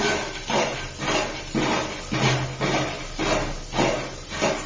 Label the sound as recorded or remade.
recorded